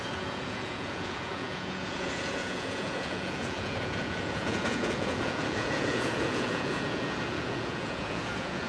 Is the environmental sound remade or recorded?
remade